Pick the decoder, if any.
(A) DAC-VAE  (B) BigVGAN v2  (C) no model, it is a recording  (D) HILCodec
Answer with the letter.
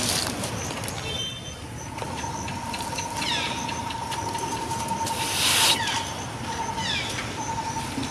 C